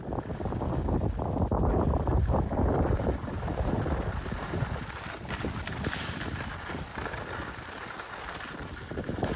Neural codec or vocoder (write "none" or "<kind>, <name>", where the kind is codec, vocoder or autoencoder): none